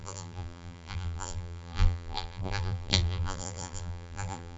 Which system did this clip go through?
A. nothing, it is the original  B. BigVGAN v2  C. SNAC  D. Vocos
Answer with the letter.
B